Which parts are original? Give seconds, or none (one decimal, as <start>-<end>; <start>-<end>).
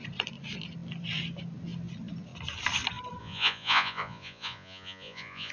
0.0-3.2